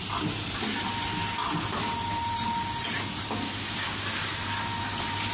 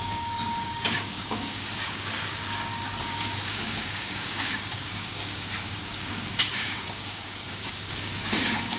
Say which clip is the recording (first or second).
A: first